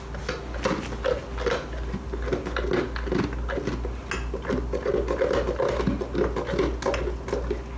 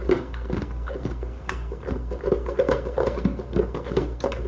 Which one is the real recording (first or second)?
first